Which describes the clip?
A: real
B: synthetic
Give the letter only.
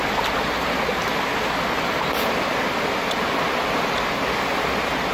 A